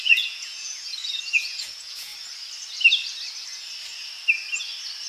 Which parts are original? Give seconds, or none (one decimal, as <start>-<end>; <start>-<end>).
2.1-5.1